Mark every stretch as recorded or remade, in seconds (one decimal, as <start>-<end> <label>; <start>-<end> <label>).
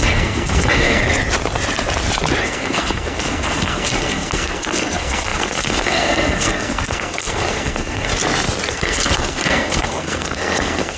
0.0-1.1 remade; 1.1-2.4 recorded; 2.4-8.1 remade; 8.1-8.7 recorded; 8.7-11.0 remade